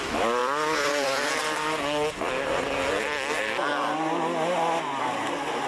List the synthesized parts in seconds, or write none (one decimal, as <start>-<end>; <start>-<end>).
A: 0.4-1.3; 3.7-5.0